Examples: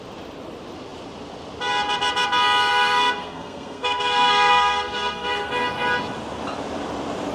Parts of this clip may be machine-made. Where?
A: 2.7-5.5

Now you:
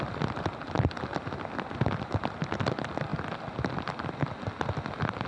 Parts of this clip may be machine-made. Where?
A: none

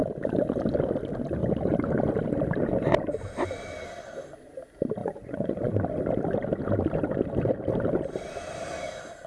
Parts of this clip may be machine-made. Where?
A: 5.0-5.7

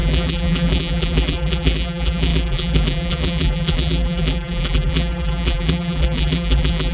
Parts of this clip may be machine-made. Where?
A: 0.0-6.9

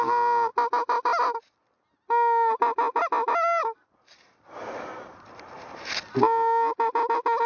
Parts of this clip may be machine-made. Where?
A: none

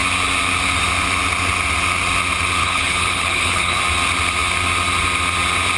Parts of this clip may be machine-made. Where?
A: 2.6-3.8

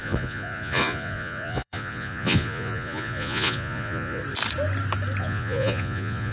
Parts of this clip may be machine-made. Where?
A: 0.0-4.2; 5.2-6.3